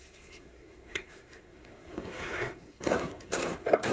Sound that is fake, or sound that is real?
fake